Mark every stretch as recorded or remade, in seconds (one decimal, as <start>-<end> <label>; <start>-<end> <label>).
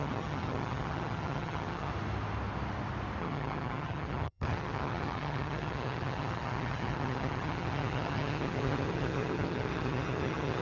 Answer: 0.0-1.9 remade; 1.9-3.2 recorded; 3.2-10.6 remade